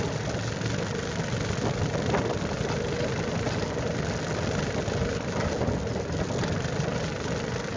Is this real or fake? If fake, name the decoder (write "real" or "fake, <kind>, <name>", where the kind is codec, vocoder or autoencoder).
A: real